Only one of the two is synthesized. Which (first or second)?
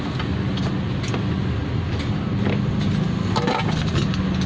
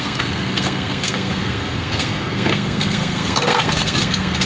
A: second